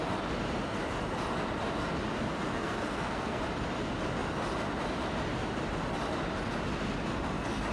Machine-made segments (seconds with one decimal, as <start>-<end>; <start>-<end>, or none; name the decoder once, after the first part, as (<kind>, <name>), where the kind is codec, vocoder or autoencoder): 2.5-3.4 (codec, SNAC)